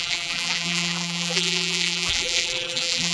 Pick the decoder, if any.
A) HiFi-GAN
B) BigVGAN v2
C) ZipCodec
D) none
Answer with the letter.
B